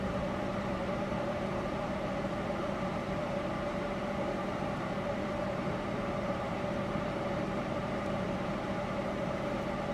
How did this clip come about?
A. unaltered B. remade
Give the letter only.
B